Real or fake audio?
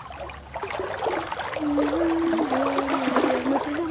real